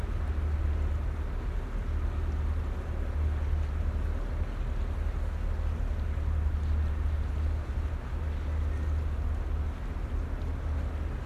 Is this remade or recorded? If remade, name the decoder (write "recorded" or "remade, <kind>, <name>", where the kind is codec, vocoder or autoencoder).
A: recorded